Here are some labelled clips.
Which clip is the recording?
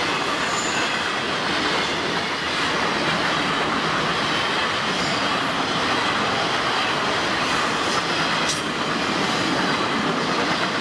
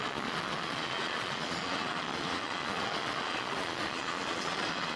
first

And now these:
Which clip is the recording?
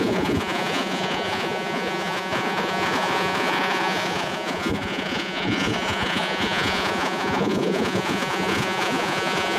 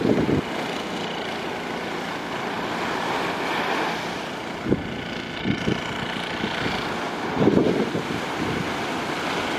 second